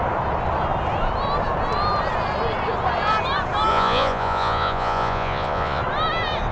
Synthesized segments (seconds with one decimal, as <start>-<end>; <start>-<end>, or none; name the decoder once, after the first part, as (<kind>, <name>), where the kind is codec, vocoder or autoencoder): 3.7-5.8 (vocoder, Vocos)